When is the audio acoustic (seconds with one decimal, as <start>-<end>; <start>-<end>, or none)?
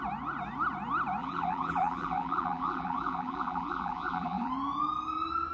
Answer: 0.0-1.2; 4.5-5.5